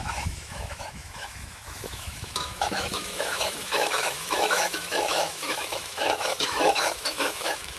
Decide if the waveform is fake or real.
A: fake